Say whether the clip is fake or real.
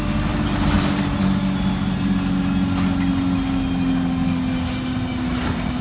real